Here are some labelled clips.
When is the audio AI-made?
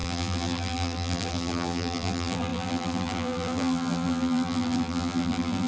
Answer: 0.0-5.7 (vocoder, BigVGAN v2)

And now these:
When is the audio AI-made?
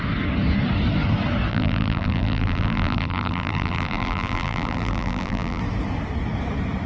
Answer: 1.5-5.6 (vocoder, BigVGAN v2)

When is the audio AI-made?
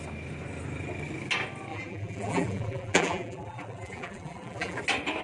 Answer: 1.7-4.8 (vocoder, BigVGAN v2)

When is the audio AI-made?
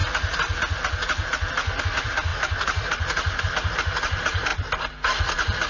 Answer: 1.8-4.5 (vocoder, BigVGAN v2)